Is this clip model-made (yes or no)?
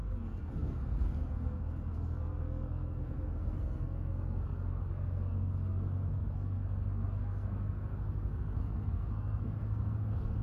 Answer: yes